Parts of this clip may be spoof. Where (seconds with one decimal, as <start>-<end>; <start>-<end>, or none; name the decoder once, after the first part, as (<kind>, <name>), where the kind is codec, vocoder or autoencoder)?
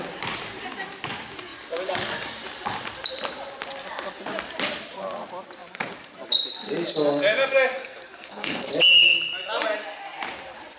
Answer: 7.8-8.7 (codec, SNAC)